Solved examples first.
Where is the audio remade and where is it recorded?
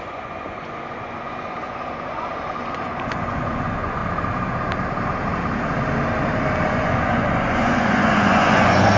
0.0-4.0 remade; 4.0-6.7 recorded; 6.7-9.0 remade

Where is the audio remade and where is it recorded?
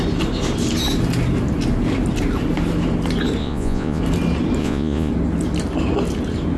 0.0-3.4 recorded; 3.4-4.0 remade; 4.0-4.6 recorded; 4.6-5.1 remade; 5.1-6.6 recorded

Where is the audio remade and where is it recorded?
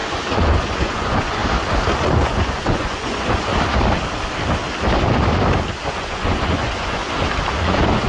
0.0-1.4 remade; 1.4-2.2 recorded; 2.2-3.5 remade; 3.5-5.9 recorded; 5.9-7.0 remade; 7.0-7.6 recorded; 7.6-8.1 remade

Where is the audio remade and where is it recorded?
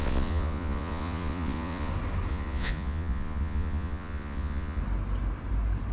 0.0-1.9 remade; 1.9-2.3 recorded; 2.3-4.8 remade; 4.8-5.9 recorded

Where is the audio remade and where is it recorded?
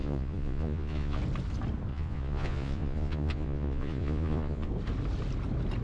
0.0-1.2 remade; 1.2-1.9 recorded; 1.9-4.7 remade; 4.7-5.8 recorded